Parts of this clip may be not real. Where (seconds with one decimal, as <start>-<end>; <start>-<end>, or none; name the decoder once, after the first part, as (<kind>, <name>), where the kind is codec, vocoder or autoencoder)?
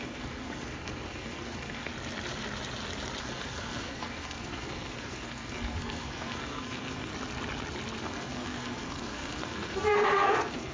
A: 0.0-1.9 (codec, SNAC); 3.2-7.1; 8.0-10.7